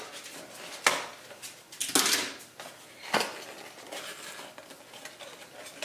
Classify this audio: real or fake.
real